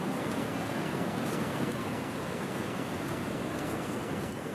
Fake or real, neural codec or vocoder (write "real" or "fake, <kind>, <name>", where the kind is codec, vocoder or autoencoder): fake, codec, SNAC